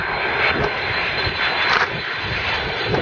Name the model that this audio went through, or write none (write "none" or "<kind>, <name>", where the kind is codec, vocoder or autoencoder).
none